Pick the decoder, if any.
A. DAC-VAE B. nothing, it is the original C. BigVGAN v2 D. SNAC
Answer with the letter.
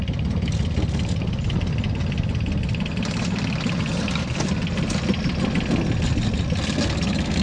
B